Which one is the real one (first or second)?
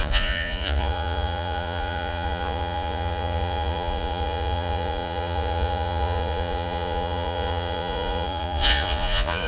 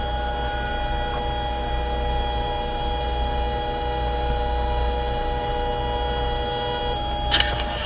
second